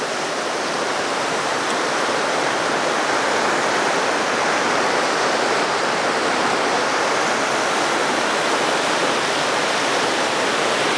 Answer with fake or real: real